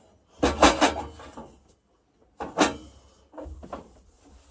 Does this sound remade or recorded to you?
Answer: recorded